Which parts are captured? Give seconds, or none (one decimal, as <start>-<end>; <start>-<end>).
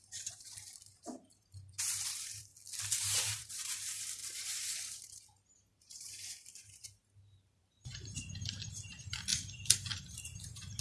2.5-3.0